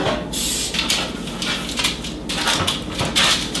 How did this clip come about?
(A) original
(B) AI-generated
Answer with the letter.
A